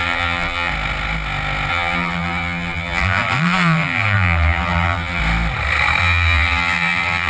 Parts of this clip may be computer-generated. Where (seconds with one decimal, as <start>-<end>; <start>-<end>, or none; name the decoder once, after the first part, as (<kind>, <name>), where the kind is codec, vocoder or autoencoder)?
0.0-0.7 (vocoder, BigVGAN v2); 1.7-5.2; 6.0-7.3